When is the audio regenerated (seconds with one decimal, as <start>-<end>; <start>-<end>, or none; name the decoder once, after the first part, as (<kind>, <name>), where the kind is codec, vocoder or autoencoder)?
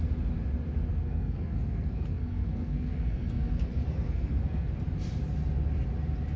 0.9-4.7 (codec, SNAC)